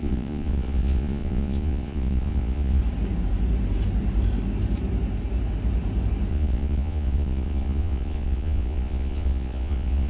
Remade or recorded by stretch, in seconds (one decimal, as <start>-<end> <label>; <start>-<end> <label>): 0.0-2.8 remade; 2.8-6.3 recorded; 6.3-10.1 remade